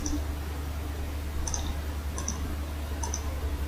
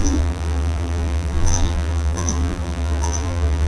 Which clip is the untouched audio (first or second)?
first